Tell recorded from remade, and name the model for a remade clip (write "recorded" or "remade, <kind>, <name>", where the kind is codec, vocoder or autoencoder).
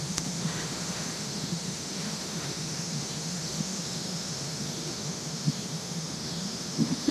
remade, autoencoder, DAC-VAE